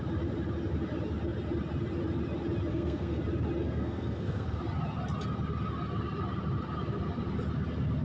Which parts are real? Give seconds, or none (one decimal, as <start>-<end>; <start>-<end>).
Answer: 0.0-2.7; 3.2-3.6; 4.6-8.0